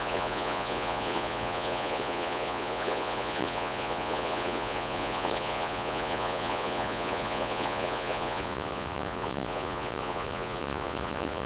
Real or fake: fake